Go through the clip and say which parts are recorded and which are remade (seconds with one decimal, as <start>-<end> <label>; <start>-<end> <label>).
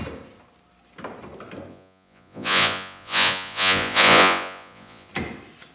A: 0.0-1.7 recorded; 1.7-5.1 remade; 5.1-5.7 recorded